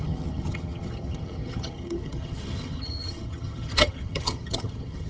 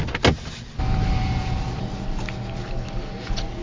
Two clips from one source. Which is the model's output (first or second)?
first